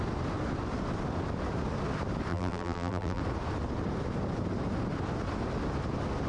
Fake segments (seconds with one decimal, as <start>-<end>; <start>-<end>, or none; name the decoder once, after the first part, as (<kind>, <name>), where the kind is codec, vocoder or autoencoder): 2.3-3.2 (vocoder, BigVGAN v2)